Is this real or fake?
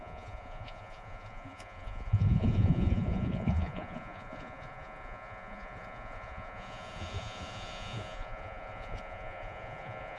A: fake